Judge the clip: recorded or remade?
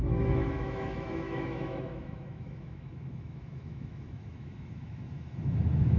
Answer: remade